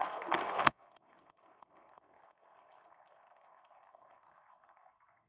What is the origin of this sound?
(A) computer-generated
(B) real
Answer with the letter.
A